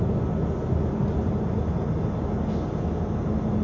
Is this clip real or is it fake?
real